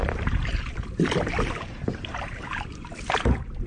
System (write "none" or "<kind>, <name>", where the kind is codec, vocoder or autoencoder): vocoder, BigVGAN v2